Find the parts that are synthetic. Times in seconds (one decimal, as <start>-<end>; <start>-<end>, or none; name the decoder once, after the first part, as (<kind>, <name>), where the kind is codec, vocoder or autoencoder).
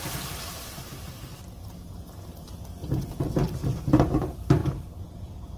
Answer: 2.8-4.1 (vocoder, BigVGAN v2); 4.6-5.6